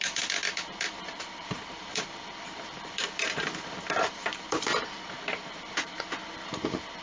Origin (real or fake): fake